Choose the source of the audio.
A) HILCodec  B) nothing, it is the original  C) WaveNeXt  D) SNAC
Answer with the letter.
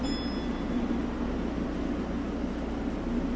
B